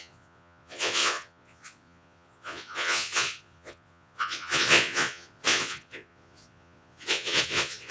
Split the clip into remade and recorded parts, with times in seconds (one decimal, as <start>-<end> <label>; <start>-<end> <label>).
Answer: 0.0-7.9 remade